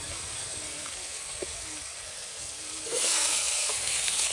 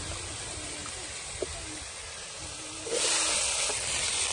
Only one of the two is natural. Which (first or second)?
second